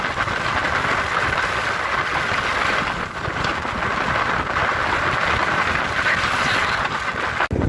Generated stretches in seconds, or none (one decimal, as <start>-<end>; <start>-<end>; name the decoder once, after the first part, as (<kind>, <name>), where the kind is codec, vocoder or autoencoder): none